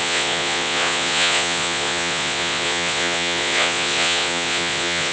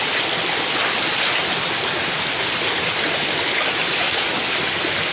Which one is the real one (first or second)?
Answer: second